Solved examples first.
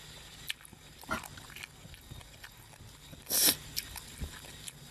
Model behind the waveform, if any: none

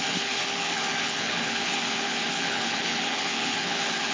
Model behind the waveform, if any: codec, HILCodec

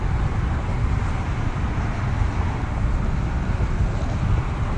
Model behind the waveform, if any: none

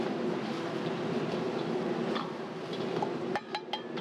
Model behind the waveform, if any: none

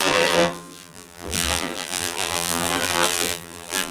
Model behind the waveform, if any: vocoder, BigVGAN v2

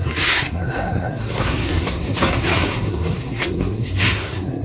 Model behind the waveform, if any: codec, SNAC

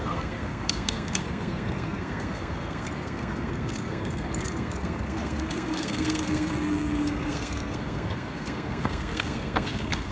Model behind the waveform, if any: codec, SNAC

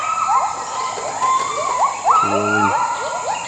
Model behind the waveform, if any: none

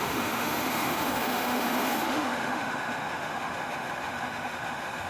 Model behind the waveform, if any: autoencoder, DAC-VAE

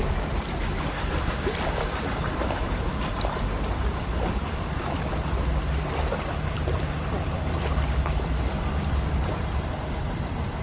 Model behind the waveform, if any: vocoder, BigVGAN v2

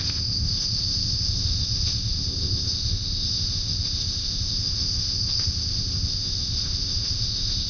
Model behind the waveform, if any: codec, ZipCodec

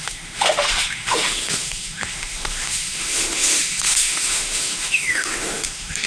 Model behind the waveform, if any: autoencoder, DAC-VAE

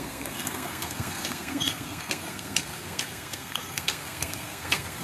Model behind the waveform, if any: codec, SNAC